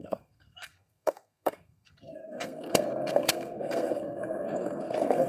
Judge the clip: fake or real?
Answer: fake